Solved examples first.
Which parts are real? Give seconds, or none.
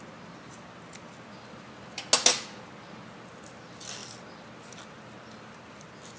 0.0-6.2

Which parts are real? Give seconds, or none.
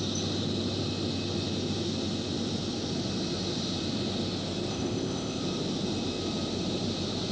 0.0-4.7; 5.4-7.3